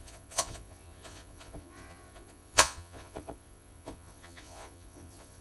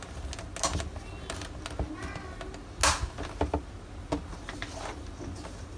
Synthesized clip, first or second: first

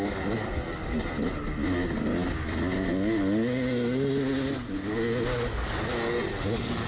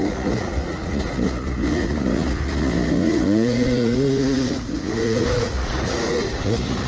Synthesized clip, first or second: second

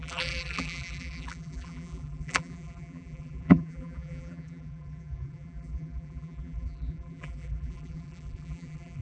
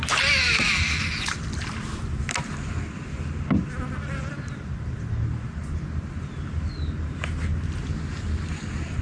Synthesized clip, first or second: first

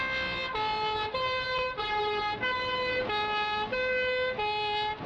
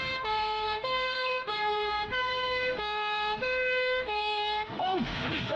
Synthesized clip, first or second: second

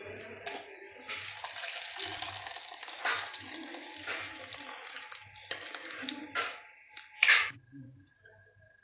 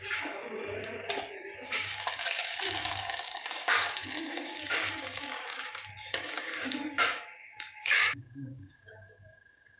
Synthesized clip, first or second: second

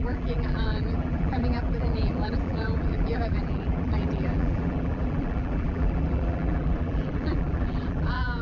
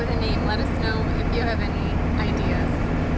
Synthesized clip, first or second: first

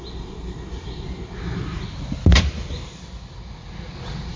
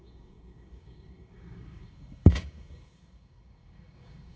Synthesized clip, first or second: second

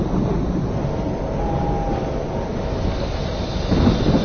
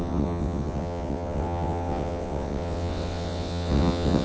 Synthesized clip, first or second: second